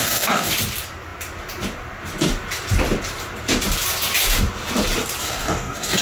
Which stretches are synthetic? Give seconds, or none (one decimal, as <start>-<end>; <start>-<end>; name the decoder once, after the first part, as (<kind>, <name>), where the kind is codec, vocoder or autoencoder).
0.0-0.5 (codec, DAC); 5.2-6.0